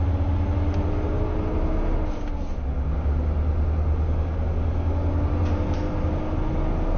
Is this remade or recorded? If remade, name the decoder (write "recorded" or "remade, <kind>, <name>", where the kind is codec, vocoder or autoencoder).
recorded